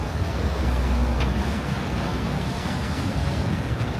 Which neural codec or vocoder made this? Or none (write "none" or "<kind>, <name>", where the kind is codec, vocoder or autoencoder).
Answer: codec, SNAC